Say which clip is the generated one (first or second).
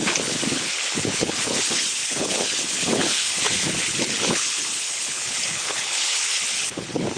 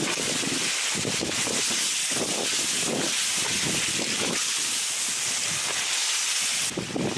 first